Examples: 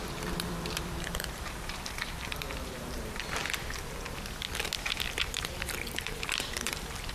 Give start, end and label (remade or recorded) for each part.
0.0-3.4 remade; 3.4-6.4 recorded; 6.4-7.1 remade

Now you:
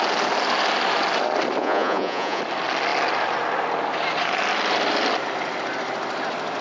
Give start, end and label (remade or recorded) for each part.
0.0-1.6 recorded; 1.6-2.4 remade; 2.4-6.6 recorded

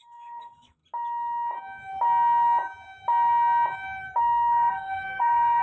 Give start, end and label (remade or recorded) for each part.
0.0-0.8 remade; 0.8-4.2 recorded; 4.2-5.6 remade

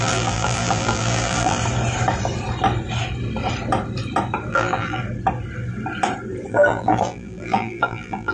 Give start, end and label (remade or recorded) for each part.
0.0-1.6 remade; 1.6-4.5 recorded; 4.5-5.0 remade; 5.0-6.5 recorded; 6.5-8.3 remade